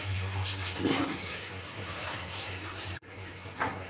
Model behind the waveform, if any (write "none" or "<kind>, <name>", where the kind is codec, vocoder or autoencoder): codec, SNAC